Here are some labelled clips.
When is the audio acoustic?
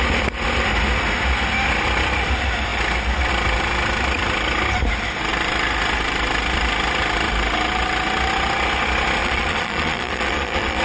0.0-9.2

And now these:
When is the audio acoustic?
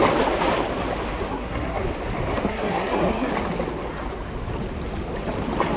0.0-1.3; 1.8-2.5; 3.3-5.8